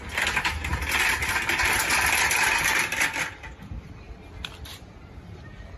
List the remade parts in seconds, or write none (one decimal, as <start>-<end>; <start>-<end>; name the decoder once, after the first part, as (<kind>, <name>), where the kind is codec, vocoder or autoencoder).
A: none